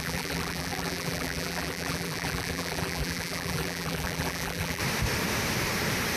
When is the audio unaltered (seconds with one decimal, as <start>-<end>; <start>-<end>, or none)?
4.8-6.2